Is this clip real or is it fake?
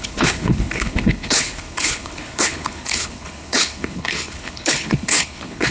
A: fake